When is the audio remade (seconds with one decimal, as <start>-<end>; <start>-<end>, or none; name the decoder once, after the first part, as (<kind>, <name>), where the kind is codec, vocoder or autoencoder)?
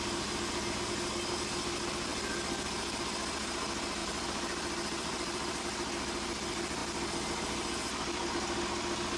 4.0-5.6 (vocoder, BigVGAN v2)